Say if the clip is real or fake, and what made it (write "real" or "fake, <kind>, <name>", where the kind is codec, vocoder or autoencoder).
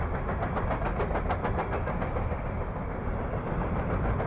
real